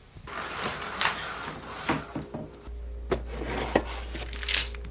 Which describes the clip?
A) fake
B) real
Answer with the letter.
B